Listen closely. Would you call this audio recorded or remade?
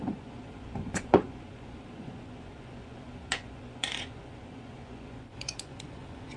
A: remade